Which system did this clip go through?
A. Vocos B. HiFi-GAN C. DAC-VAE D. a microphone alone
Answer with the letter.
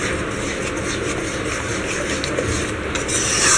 D